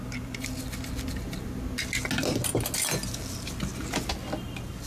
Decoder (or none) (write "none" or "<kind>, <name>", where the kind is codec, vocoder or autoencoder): none